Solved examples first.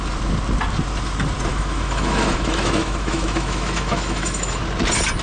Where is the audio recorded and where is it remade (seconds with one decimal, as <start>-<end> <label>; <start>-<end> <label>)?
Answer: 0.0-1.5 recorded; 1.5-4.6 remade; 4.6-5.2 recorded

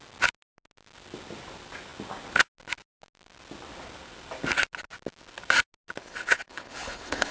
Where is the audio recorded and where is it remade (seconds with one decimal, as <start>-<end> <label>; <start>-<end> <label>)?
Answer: 0.0-6.0 recorded; 6.0-7.3 remade

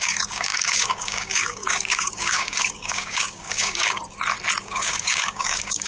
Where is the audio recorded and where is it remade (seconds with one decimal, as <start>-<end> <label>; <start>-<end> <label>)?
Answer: 0.0-4.0 remade; 4.0-4.6 recorded; 4.6-5.9 remade

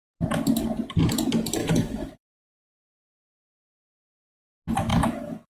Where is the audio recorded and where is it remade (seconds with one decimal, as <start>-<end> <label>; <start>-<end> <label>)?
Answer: 0.0-1.6 recorded; 1.6-4.5 remade; 4.5-4.9 recorded; 4.9-5.5 remade

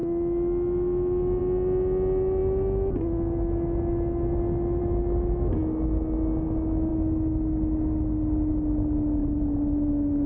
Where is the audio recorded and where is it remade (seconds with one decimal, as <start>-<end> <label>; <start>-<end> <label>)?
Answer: 0.0-9.2 recorded; 9.2-9.9 remade; 9.9-10.3 recorded

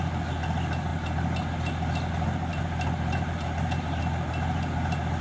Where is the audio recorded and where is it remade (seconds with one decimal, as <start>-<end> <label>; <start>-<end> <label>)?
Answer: 0.0-5.2 recorded

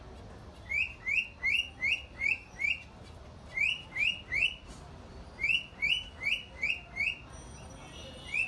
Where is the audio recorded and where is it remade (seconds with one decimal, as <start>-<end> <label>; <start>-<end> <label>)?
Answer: 0.0-2.1 recorded; 2.1-7.2 remade; 7.2-8.5 recorded